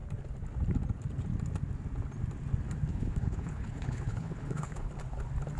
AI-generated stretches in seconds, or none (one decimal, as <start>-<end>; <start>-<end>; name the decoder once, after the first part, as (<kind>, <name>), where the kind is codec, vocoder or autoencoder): 2.9-4.9 (codec, HILCodec)